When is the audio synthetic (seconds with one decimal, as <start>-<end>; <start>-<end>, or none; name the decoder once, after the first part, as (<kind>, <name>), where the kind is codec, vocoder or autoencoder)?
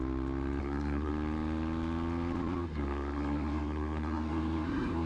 0.6-1.1 (codec, SNAC); 2.6-5.1